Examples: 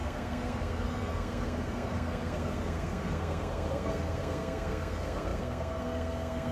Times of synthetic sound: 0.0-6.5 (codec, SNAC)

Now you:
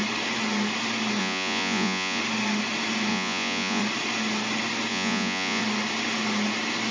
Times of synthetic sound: 1.2-2.2 (vocoder, Vocos); 3.1-3.8; 4.9-5.6

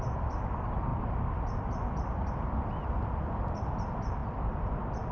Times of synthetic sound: 0.9-2.3 (vocoder, BigVGAN v2); 4.2-5.1